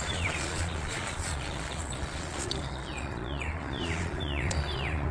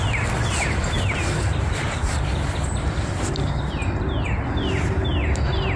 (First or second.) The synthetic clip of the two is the first